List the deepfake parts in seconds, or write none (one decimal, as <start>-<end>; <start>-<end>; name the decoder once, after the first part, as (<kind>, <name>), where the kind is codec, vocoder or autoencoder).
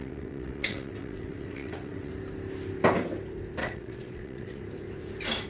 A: 0.0-2.1 (vocoder, WaveNeXt); 3.6-4.6